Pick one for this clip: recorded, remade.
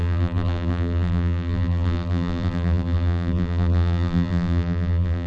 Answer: remade